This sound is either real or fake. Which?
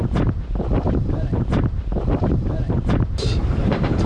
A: fake